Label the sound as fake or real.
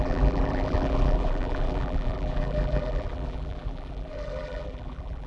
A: fake